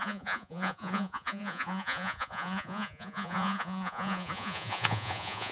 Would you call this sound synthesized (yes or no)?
yes